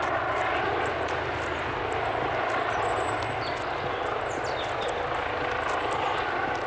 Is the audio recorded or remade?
recorded